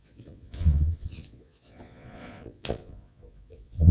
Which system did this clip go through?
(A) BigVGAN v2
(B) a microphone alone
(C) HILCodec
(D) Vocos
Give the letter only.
D